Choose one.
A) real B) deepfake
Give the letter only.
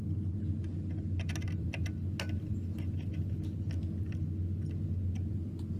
A